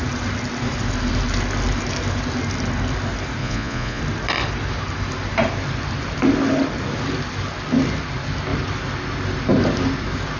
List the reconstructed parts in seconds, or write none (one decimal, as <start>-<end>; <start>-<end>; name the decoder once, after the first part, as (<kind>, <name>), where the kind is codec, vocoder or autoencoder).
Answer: 3.4-4.0 (vocoder, Vocos)

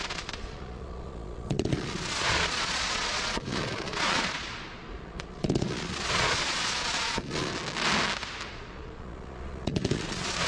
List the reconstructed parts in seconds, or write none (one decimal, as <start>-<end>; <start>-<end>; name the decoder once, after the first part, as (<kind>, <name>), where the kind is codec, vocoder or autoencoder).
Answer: 0.0-7.5 (vocoder, Vocos); 8.5-10.5

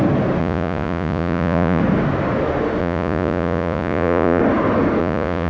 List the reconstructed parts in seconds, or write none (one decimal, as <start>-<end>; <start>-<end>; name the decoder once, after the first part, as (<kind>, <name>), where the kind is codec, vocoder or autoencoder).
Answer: 0.4-1.8 (vocoder, Vocos); 2.8-4.4; 5.0-5.5

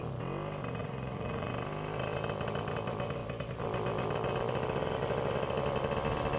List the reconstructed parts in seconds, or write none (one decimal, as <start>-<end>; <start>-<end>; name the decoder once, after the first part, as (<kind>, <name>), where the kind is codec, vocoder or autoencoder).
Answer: 0.8-1.5 (vocoder, Vocos)

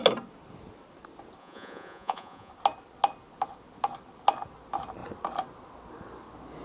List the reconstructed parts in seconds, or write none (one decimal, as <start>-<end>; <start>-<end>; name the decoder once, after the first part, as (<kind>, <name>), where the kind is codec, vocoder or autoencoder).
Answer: 1.4-2.5 (vocoder, Vocos)